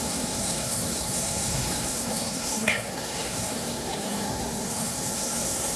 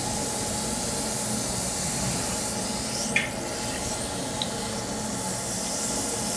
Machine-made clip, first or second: first